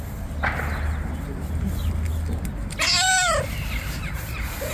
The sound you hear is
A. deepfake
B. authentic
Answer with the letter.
B